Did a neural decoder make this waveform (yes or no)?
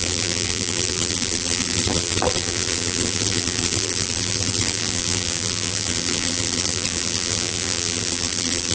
yes